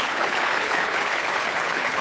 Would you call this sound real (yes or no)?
no